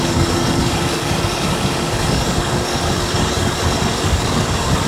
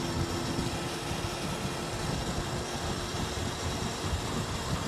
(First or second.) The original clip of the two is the second